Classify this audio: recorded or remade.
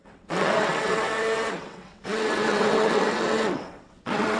remade